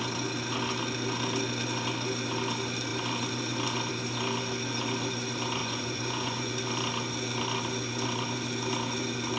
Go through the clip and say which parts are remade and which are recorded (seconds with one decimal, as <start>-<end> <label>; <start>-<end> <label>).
0.0-5.6 recorded; 5.6-6.5 remade; 6.5-9.4 recorded

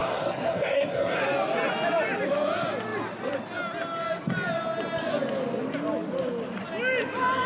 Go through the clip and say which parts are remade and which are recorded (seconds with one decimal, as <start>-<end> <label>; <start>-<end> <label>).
0.0-1.2 remade; 1.2-7.5 recorded

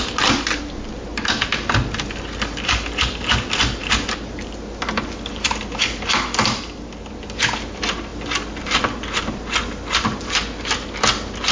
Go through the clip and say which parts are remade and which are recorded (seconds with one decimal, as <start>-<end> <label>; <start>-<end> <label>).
0.0-11.5 recorded

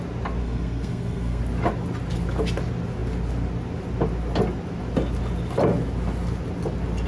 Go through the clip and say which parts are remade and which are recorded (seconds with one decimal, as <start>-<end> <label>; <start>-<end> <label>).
0.0-0.4 recorded; 0.4-1.4 remade; 1.4-7.1 recorded

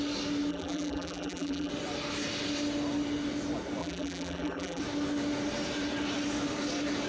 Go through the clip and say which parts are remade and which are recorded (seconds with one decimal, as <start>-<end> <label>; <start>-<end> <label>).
0.0-0.5 recorded; 0.5-1.7 remade; 1.7-3.8 recorded; 3.8-4.8 remade; 4.8-7.1 recorded

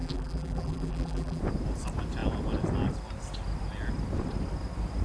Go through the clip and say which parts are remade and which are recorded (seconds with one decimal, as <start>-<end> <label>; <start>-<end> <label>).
0.0-1.4 remade; 1.4-5.0 recorded

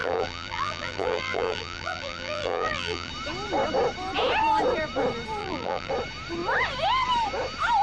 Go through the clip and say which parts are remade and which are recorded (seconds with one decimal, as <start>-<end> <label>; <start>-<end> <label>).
0.0-3.1 remade; 3.1-5.4 recorded; 5.4-5.9 remade; 5.9-7.8 recorded

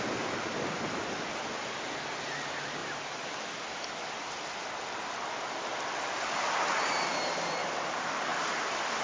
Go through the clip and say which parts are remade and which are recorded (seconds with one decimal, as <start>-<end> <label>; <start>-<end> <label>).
0.0-9.0 recorded